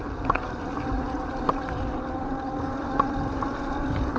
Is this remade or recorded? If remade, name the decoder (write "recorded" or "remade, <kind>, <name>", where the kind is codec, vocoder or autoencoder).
recorded